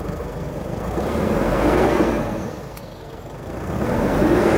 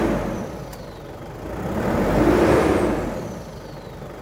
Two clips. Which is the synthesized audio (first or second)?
first